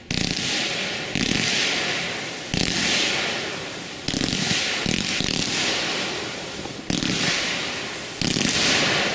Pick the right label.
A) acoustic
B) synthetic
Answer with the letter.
A